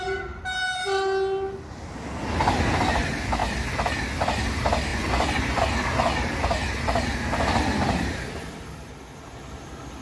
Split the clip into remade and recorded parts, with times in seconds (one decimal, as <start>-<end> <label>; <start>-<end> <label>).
0.0-4.9 recorded; 4.9-5.6 remade; 5.6-10.0 recorded